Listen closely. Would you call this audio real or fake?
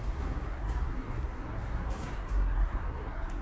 fake